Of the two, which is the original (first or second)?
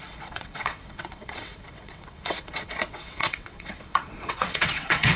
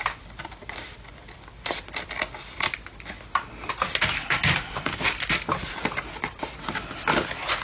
second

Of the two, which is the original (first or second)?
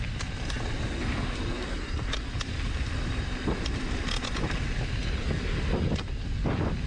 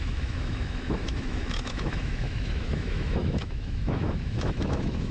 first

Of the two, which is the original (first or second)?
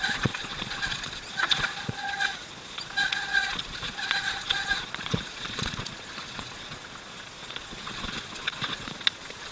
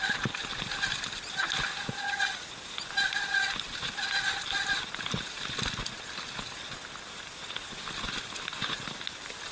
second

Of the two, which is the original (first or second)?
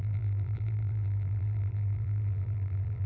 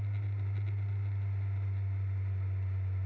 second